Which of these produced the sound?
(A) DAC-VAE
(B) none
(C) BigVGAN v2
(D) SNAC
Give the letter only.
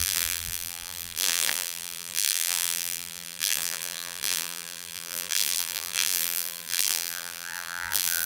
C